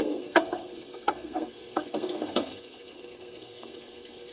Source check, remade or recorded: remade